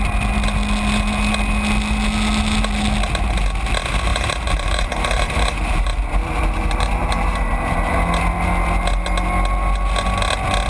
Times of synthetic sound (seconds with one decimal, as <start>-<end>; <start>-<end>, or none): 4.1-7.9